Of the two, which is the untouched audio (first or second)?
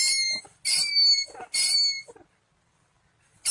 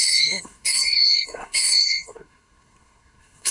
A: first